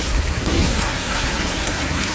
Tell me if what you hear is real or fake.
fake